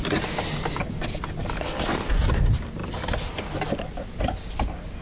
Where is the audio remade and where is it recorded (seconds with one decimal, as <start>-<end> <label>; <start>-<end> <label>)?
0.0-2.8 recorded; 2.8-4.2 remade; 4.2-5.0 recorded